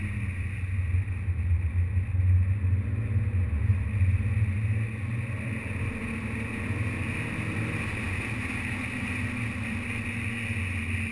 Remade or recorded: recorded